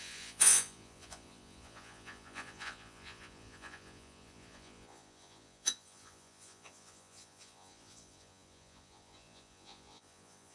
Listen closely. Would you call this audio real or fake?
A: fake